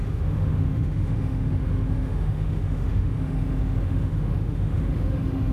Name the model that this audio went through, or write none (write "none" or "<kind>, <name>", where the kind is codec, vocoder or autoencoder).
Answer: autoencoder, DAC-VAE